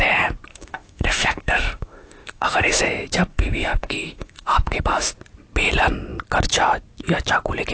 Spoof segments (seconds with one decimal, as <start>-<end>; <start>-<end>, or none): 0.5-2.8; 3.3-5.1